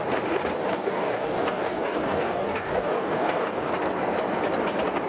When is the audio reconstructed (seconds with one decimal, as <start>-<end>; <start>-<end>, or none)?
0.7-3.7